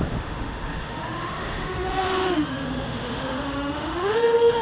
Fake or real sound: fake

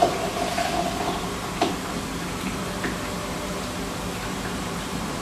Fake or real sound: fake